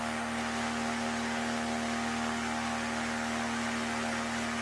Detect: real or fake real